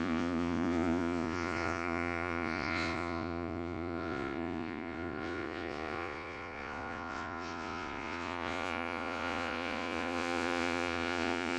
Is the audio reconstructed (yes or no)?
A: yes